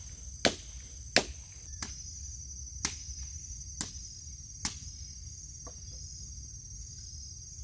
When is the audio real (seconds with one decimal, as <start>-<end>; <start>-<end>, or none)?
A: 0.0-7.6